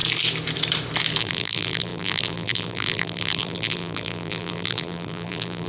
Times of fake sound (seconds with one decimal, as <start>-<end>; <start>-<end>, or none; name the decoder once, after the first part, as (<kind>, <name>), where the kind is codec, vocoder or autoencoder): 1.2-5.7 (vocoder, BigVGAN v2)